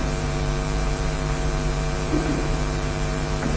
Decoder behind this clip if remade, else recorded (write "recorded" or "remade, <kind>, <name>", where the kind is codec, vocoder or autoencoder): remade, vocoder, BigVGAN v2